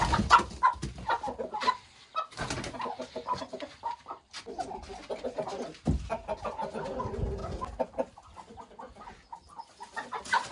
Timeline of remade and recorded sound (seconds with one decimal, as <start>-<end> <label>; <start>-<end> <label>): 0.0-10.5 recorded